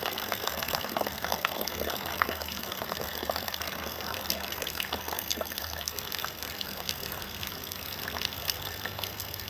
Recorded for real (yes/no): no